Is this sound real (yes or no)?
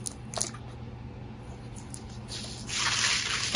yes